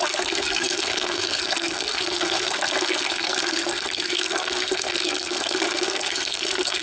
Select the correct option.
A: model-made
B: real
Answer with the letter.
A